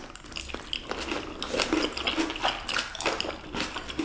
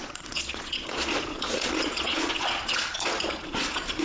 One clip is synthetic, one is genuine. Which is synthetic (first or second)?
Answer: second